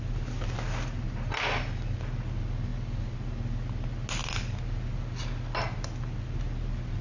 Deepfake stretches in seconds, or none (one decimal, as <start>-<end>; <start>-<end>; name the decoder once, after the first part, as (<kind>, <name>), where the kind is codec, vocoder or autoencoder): none